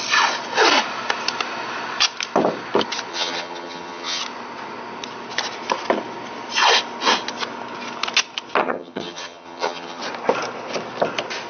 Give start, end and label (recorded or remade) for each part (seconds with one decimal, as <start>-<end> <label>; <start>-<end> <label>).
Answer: 0.0-3.1 recorded; 3.1-4.2 remade; 4.2-8.6 recorded; 8.6-10.0 remade; 10.0-11.5 recorded